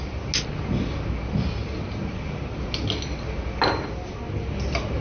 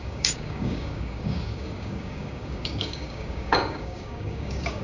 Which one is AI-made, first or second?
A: second